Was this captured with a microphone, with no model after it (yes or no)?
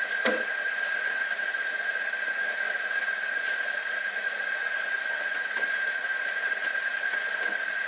no